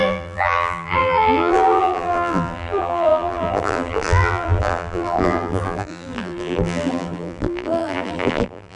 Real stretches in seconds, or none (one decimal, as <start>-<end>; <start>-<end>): none